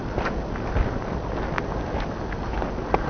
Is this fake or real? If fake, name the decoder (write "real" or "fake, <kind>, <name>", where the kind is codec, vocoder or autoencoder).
real